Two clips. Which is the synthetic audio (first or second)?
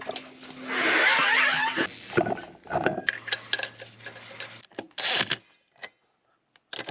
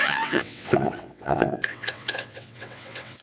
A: second